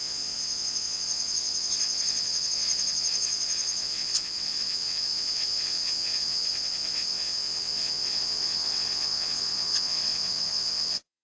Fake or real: fake